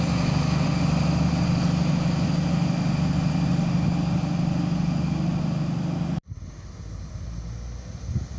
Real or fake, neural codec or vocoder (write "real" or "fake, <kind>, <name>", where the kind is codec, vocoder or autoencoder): real